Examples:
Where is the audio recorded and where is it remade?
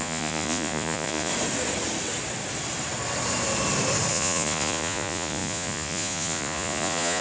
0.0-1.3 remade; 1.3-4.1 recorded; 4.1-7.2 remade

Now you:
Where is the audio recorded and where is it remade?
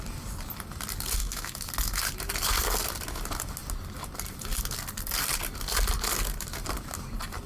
0.0-1.2 recorded; 1.2-1.7 remade; 1.7-7.5 recorded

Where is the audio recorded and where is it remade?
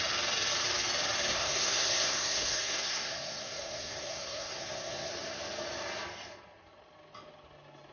0.0-1.3 recorded; 1.3-5.1 remade; 5.1-7.9 recorded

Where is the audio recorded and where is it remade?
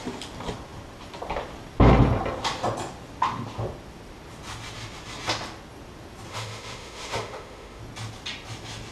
0.0-6.3 recorded; 6.3-7.8 remade; 7.8-8.9 recorded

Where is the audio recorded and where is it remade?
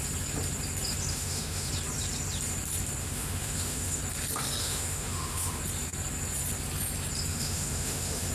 0.0-1.1 recorded; 1.1-1.7 remade; 1.7-3.0 recorded; 3.0-4.0 remade; 4.0-4.6 recorded; 4.6-5.6 remade; 5.6-7.3 recorded; 7.3-8.3 remade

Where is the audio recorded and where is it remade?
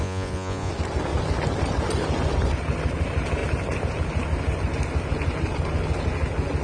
0.0-0.7 remade; 0.7-6.6 recorded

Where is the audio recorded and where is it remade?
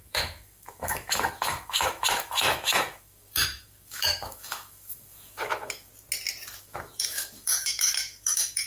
0.0-5.9 remade; 5.9-6.6 recorded; 6.6-8.7 remade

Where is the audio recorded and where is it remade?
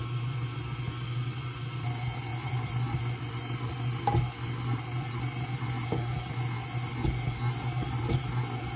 0.0-2.3 recorded; 2.3-3.3 remade; 3.3-8.8 recorded